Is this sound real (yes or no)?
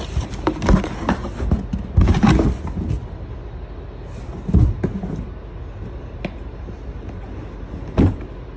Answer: yes